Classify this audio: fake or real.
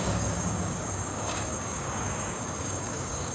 fake